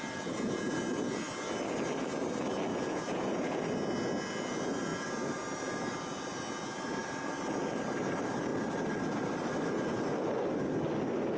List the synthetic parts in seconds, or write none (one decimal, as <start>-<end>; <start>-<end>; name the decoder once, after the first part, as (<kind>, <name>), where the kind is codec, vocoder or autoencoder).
2.7-3.6 (vocoder, Vocos)